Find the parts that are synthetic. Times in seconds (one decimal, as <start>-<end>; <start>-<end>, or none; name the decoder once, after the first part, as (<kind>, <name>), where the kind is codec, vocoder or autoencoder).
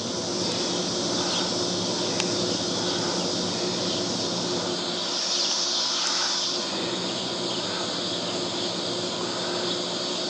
6.6-7.5 (vocoder, Vocos)